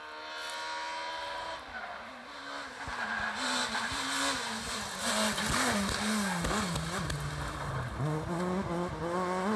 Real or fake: real